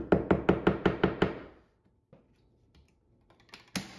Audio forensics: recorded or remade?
recorded